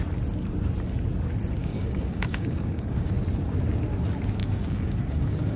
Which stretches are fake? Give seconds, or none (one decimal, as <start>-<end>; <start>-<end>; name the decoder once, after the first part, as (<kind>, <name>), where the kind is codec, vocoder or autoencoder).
1.6-3.1 (codec, DAC); 4.4-5.6